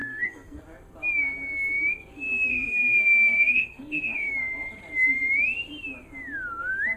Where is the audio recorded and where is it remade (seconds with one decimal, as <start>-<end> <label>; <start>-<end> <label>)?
0.0-0.6 remade; 0.6-2.5 recorded; 2.5-4.3 remade; 4.3-7.0 recorded